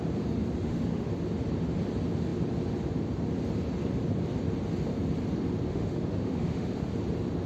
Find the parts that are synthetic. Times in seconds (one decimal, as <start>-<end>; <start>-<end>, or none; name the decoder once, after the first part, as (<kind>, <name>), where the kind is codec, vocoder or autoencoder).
0.6-1.1 (autoencoder, DAC-VAE); 5.7-6.9